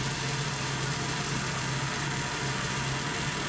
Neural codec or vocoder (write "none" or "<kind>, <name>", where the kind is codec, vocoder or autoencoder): none